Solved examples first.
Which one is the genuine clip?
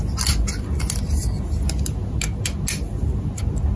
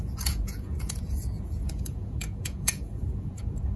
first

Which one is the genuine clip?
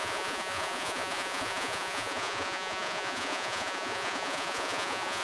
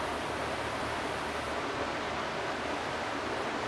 second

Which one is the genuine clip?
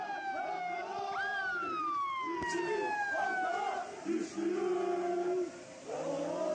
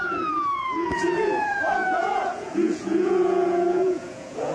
first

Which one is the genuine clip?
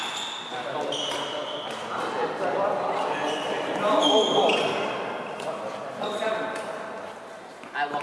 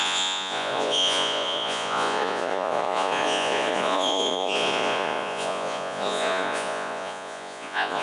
first